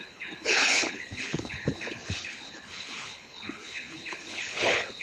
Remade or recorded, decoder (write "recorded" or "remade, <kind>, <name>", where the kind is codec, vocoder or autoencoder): remade, codec, HILCodec